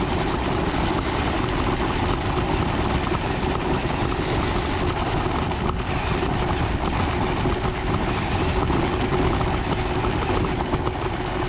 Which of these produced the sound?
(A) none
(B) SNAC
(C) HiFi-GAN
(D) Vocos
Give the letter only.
A